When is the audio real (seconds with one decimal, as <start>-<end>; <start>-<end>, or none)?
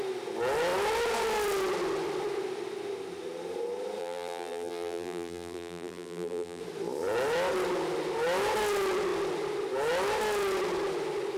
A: 0.0-4.0; 6.6-11.4